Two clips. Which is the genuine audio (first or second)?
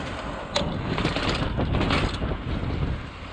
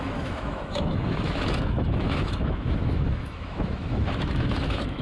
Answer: first